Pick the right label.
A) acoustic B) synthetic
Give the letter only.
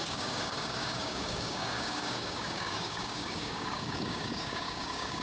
B